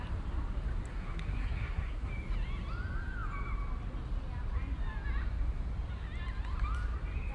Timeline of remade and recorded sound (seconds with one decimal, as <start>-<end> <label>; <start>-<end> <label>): 0.0-0.9 recorded; 0.9-2.1 remade; 2.1-7.3 recorded

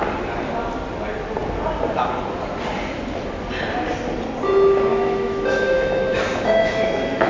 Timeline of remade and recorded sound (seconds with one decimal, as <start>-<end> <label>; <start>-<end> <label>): 0.0-4.9 recorded; 4.9-7.3 remade

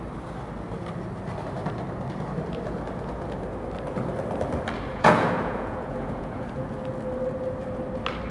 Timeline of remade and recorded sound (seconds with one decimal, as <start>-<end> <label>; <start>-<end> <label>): 0.0-4.9 recorded; 4.9-6.5 remade; 6.5-8.3 recorded

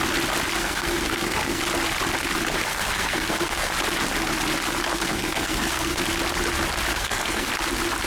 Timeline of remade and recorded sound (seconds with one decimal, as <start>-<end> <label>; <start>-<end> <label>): 0.0-0.6 recorded; 0.6-1.6 remade; 1.6-2.7 recorded; 2.7-3.7 remade; 3.7-4.9 recorded; 4.9-6.0 remade; 6.0-6.9 recorded; 6.9-7.5 remade; 7.5-8.1 recorded